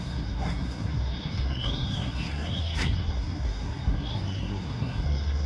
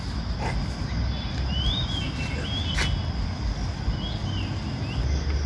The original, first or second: second